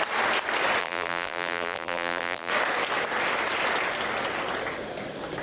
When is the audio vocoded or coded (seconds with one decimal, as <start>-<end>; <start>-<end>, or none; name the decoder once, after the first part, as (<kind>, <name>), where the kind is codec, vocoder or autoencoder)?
0.8-2.5 (vocoder, BigVGAN v2)